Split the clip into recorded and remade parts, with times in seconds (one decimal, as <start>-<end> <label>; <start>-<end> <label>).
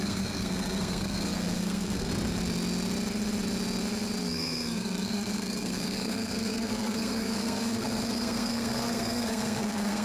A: 0.0-2.1 remade; 2.1-4.2 recorded; 4.2-10.0 remade